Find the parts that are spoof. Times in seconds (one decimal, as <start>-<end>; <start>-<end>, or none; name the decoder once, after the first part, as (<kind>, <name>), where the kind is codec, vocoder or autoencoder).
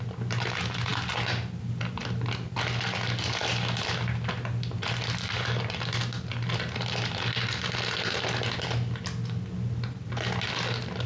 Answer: none